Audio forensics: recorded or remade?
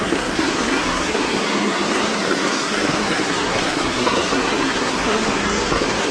remade